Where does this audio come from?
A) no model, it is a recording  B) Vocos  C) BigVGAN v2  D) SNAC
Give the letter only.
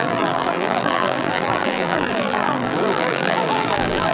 C